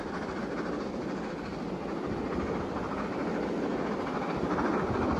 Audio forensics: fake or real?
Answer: real